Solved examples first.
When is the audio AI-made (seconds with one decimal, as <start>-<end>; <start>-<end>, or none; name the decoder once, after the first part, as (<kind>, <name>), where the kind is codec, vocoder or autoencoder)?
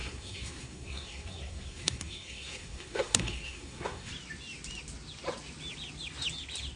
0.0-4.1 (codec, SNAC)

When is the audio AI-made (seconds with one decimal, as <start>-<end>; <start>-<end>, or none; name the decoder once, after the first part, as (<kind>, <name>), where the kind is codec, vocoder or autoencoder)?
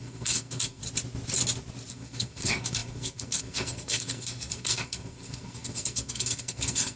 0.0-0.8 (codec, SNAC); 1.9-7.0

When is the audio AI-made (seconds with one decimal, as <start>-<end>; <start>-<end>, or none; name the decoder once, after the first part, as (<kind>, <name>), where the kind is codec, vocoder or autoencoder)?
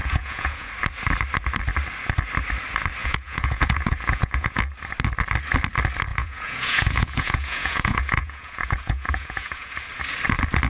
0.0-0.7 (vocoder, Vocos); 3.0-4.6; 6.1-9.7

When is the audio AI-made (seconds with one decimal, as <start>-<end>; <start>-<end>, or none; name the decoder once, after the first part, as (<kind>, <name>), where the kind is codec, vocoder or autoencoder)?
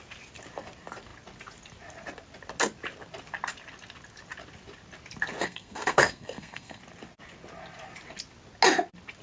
5.4-6.8 (codec, SNAC)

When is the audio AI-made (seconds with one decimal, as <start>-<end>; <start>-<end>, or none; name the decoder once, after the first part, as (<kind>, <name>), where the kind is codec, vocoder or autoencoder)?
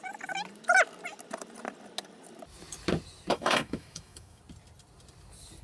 3.3-4.4 (autoencoder, DAC-VAE)